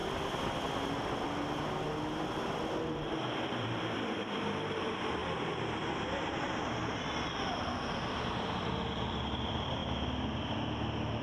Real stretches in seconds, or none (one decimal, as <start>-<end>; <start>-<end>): 0.0-3.2; 5.2-6.6; 9.8-11.2